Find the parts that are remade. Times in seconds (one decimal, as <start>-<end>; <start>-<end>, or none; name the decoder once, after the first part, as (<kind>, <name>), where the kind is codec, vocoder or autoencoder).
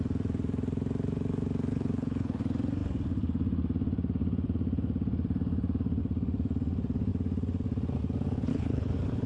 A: 1.7-2.4 (codec, HILCodec); 8.5-9.3